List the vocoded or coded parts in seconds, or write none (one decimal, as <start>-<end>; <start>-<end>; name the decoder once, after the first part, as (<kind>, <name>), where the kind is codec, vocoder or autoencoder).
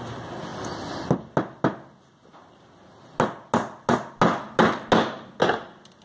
none